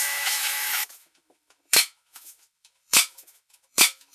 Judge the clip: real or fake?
fake